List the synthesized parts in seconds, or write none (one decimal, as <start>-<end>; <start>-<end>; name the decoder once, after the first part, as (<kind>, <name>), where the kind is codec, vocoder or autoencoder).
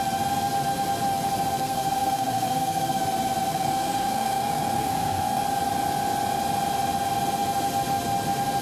1.6-3.0 (codec, SNAC); 3.5-5.4